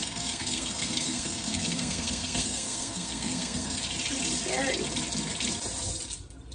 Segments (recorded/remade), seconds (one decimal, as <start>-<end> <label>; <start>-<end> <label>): 0.0-3.8 remade; 3.8-6.5 recorded

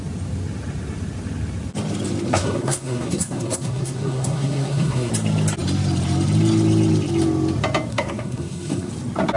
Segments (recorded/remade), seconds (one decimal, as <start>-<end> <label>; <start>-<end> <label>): 0.0-2.3 recorded; 2.3-5.1 remade; 5.1-7.9 recorded; 7.9-8.9 remade; 8.9-9.4 recorded

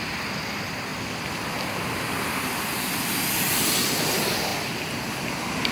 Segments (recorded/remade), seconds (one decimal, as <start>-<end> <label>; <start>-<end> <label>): 0.0-5.7 recorded

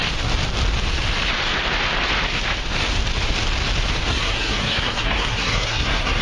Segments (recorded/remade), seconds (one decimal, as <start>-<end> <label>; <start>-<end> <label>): 0.0-4.1 recorded; 4.1-6.2 remade

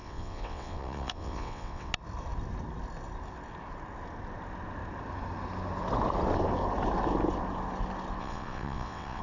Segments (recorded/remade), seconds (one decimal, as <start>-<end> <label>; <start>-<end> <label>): 0.0-1.9 remade; 1.9-8.2 recorded; 8.2-9.2 remade

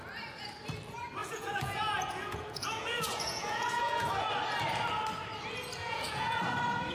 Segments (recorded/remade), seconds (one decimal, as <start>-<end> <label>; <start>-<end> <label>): 0.0-1.2 recorded; 1.2-4.1 remade; 4.1-5.8 recorded; 5.8-6.4 remade; 6.4-6.9 recorded

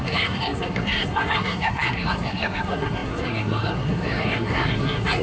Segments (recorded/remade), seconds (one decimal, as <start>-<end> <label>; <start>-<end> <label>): 0.0-5.2 remade